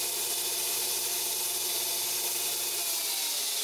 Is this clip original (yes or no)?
yes